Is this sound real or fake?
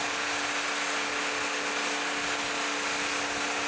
real